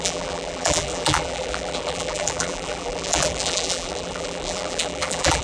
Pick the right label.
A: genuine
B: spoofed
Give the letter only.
B